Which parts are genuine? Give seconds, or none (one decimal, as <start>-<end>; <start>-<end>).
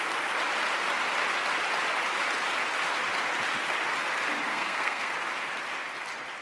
0.0-4.5; 5.1-6.4